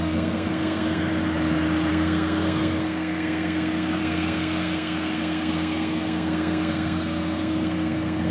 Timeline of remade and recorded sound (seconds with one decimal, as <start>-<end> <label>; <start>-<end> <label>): 0.0-1.1 remade; 1.1-1.9 recorded; 1.9-8.3 remade